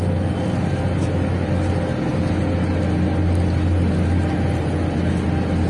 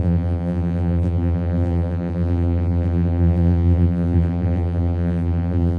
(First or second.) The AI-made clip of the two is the second